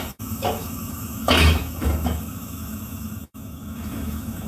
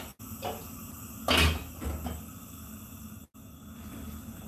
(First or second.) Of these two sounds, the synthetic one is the first